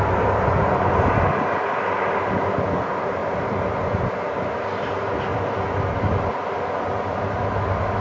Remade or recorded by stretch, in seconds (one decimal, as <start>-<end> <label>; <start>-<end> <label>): 0.0-8.0 recorded